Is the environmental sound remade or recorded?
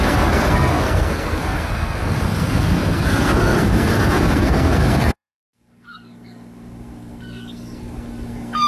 remade